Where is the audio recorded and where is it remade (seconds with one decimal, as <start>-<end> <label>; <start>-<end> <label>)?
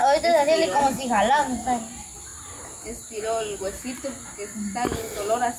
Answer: 0.0-5.6 recorded